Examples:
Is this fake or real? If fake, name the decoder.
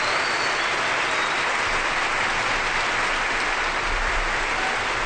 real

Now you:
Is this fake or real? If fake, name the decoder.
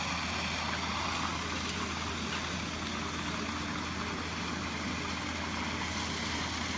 real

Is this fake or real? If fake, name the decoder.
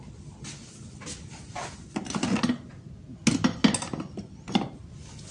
real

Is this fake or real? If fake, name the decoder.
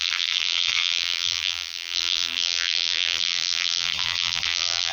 fake, vocoder, BigVGAN v2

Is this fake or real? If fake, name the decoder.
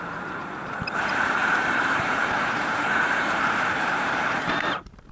fake, vocoder, BigVGAN v2